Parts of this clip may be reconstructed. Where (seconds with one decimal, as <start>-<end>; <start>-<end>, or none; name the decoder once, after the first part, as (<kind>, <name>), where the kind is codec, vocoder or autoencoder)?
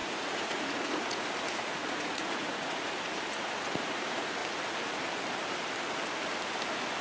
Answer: 0.0-4.4 (vocoder, Vocos)